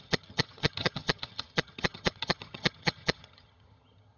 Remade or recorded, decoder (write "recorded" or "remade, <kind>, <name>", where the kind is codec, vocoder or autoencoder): remade, vocoder, HiFi-GAN